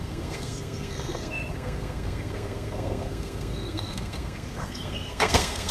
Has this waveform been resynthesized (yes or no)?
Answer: yes